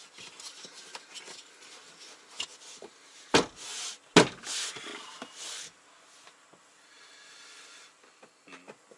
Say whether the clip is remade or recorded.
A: recorded